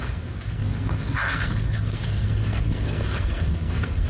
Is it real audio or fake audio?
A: fake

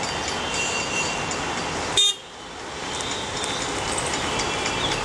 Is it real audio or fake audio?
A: real